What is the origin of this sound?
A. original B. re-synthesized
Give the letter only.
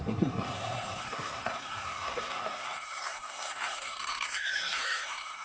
B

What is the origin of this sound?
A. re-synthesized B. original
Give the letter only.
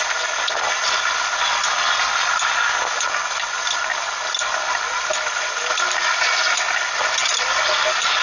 B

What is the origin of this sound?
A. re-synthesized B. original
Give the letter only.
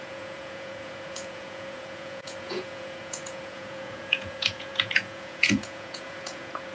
A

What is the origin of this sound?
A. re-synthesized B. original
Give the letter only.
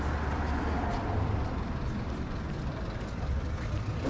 B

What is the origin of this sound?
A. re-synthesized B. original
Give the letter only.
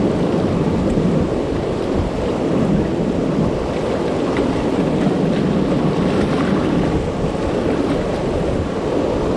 B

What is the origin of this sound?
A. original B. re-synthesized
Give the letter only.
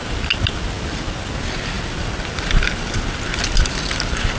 A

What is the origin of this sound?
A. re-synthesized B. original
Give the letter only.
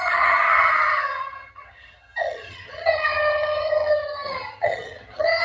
A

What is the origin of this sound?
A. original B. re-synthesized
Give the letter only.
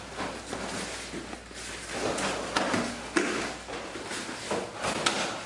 A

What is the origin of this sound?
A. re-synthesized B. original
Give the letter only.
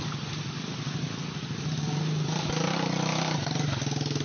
B